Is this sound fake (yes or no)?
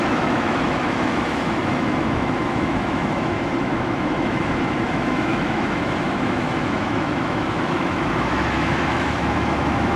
yes